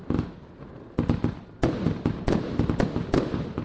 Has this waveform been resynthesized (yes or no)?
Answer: no